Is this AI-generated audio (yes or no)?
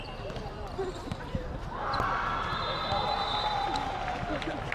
no